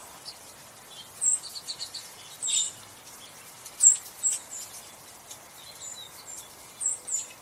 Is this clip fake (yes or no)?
no